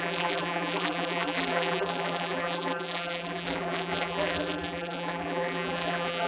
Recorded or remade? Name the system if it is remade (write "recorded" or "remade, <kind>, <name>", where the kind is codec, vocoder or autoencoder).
remade, vocoder, BigVGAN v2